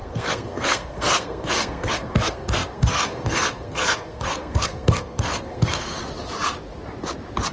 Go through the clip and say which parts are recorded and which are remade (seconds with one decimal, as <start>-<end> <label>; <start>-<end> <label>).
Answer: 0.0-6.0 remade; 6.0-7.5 recorded